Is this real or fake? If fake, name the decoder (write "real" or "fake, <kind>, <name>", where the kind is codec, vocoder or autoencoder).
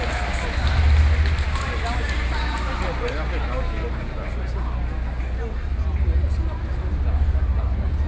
real